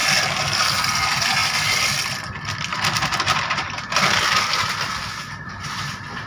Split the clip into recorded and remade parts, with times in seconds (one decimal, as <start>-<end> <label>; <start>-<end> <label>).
0.0-2.7 recorded; 2.7-3.9 remade; 3.9-6.3 recorded